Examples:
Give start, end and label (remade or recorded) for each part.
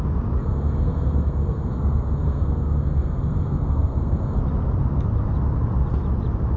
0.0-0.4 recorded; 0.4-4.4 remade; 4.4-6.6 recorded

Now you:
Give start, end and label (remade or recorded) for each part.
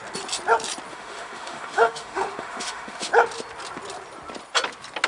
0.0-0.9 recorded; 0.9-3.1 remade; 3.1-5.1 recorded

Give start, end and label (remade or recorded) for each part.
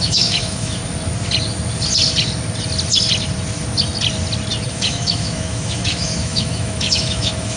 0.0-0.8 remade; 0.8-4.7 recorded; 4.7-7.6 remade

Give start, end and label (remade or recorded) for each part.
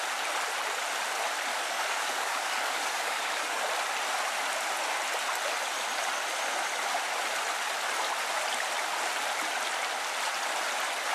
0.0-1.5 recorded; 1.5-3.6 remade; 3.6-11.1 recorded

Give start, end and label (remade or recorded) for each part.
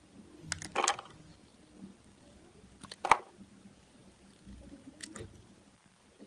0.0-6.3 recorded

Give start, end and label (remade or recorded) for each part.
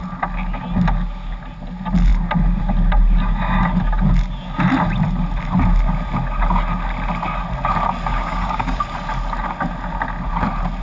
0.0-8.1 recorded; 8.1-8.8 remade; 8.8-10.8 recorded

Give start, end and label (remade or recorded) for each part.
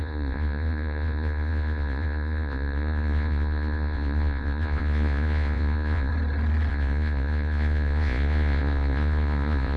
0.0-6.1 remade; 6.1-6.7 recorded; 6.7-9.8 remade